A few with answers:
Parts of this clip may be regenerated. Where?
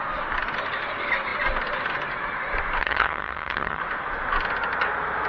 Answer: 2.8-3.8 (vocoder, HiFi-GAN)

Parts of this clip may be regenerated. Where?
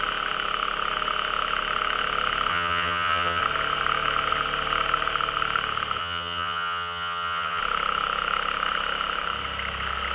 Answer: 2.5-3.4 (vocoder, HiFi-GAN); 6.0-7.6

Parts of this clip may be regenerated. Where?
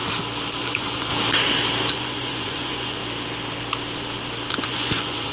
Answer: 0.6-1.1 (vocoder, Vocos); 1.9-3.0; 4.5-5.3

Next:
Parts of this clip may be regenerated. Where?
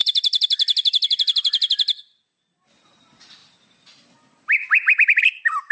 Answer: none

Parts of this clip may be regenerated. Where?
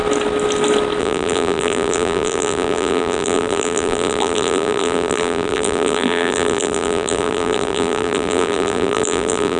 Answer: 1.0-9.6 (vocoder, BigVGAN v2)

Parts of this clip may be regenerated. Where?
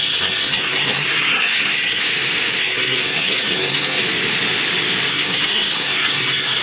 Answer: 0.0-2.0 (codec, SNAC); 2.6-4.0; 5.1-6.6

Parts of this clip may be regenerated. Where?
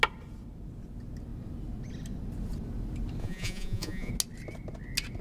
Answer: 3.2-4.1 (vocoder, Vocos)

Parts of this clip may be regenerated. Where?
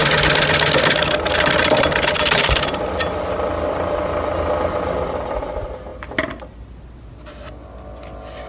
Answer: none